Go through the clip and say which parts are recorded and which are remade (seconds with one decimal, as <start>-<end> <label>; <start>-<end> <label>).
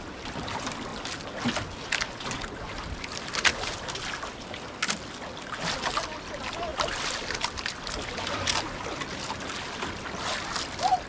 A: 0.0-11.1 recorded